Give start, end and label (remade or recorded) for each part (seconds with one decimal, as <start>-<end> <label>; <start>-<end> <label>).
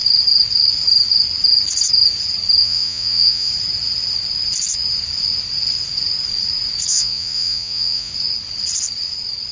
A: 0.0-2.6 recorded; 2.6-3.5 remade; 3.5-6.9 recorded; 6.9-8.1 remade; 8.1-9.5 recorded